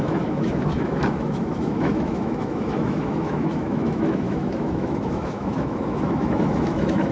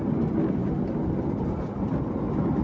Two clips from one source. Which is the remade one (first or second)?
first